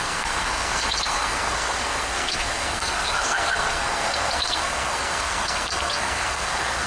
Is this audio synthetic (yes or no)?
yes